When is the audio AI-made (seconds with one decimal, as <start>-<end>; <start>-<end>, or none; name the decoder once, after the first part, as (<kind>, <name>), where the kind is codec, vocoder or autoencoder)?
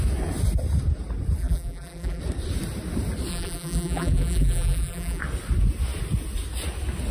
1.4-2.2 (vocoder, BigVGAN v2); 3.3-5.2